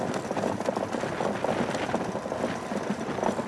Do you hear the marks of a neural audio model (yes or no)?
no